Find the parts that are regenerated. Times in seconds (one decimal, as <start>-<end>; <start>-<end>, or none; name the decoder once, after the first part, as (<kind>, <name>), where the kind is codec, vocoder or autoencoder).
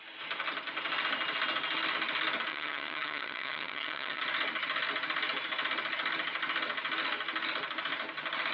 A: 2.5-4.2 (vocoder, HiFi-GAN)